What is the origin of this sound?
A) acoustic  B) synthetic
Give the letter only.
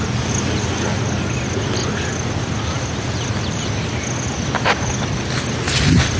A